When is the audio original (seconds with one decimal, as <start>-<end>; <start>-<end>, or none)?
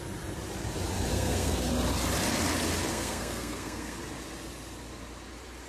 0.0-1.1; 1.7-2.9; 4.0-5.7